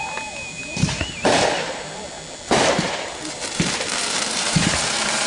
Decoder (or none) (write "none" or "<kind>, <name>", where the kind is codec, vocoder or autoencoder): vocoder, BigVGAN v2